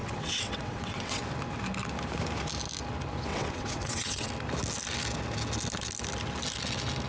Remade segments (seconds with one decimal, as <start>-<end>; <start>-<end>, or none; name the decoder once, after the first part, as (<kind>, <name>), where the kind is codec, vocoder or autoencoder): 0.0-1.2 (vocoder, WaveNeXt); 3.3-4.3